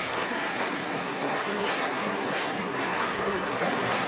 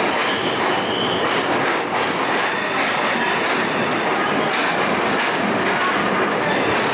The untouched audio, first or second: second